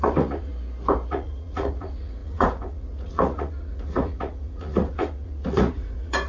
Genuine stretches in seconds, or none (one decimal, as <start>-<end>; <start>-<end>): 0.5-1.1